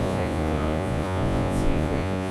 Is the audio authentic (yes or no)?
no